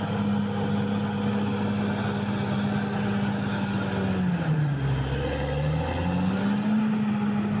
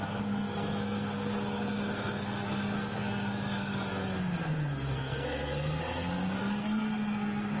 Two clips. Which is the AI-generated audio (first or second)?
second